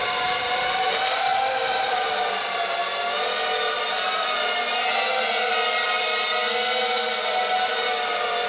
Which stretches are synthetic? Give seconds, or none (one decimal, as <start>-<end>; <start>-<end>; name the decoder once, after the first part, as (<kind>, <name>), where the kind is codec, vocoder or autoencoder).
none